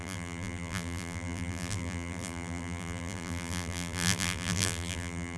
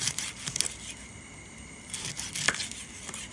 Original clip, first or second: second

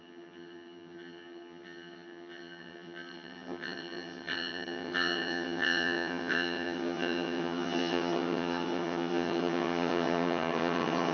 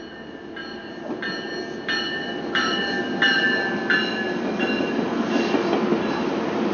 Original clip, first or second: second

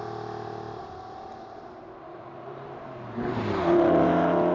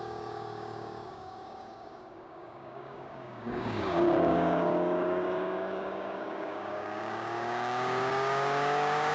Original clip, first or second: first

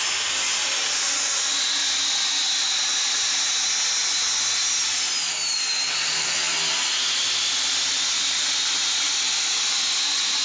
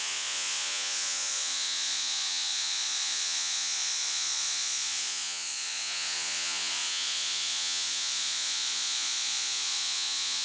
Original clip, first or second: first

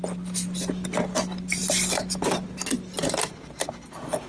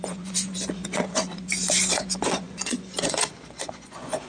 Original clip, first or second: first